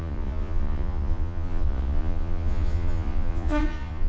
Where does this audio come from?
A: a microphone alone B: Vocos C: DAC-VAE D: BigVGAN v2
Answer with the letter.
B